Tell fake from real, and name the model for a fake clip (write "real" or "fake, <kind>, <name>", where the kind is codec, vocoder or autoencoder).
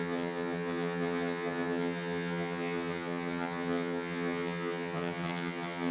fake, vocoder, HiFi-GAN